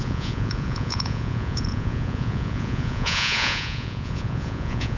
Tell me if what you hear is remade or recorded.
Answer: remade